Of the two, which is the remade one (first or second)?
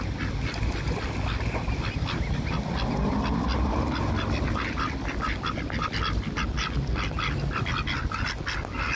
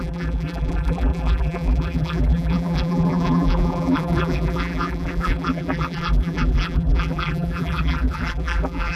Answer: second